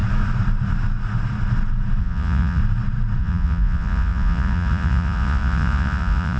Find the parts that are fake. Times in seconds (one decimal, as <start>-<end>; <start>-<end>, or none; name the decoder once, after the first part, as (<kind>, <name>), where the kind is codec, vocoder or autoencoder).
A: 2.0-2.6 (vocoder, Vocos); 3.2-6.4